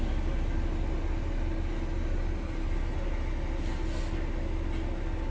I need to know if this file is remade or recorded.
recorded